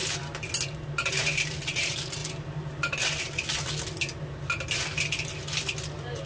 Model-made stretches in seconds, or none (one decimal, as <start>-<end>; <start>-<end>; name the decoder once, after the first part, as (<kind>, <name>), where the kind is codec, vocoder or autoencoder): none